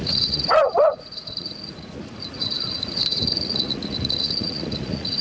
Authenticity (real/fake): fake